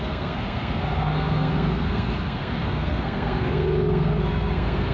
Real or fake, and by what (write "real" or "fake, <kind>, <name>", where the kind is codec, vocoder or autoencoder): fake, codec, SNAC